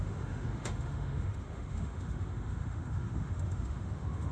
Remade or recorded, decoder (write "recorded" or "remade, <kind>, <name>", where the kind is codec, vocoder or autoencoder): remade, autoencoder, DAC-VAE